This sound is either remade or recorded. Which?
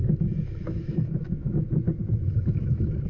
remade